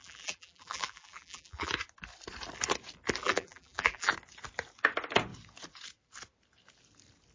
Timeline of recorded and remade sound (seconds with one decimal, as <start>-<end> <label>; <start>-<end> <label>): 0.0-1.7 remade; 1.7-3.2 recorded; 3.2-4.1 remade; 4.1-7.3 recorded